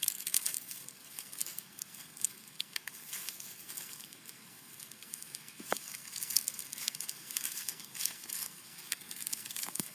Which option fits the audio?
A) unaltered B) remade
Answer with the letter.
B